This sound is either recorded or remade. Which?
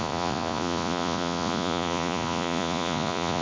remade